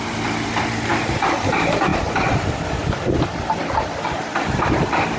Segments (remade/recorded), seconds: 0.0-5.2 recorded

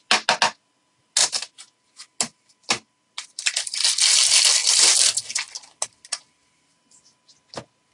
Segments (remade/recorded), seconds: 0.0-7.9 recorded

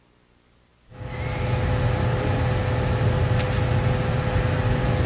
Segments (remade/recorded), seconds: 0.0-5.1 recorded